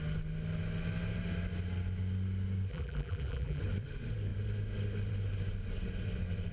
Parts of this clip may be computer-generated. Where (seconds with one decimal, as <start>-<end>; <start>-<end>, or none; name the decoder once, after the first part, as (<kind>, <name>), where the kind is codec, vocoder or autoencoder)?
2.7-3.6 (vocoder, BigVGAN v2)